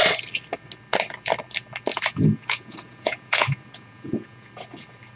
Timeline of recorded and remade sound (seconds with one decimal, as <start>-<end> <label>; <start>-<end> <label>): 0.0-1.9 recorded; 1.9-4.5 remade; 4.5-5.2 recorded